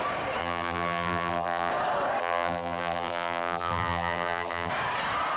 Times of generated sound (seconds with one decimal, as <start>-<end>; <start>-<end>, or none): 0.4-1.7; 2.2-4.7